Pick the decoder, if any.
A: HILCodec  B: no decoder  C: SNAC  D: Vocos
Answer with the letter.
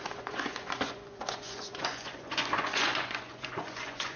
D